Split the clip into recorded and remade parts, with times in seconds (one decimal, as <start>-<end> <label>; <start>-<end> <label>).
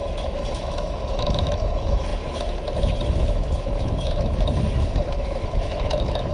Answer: 0.0-6.3 remade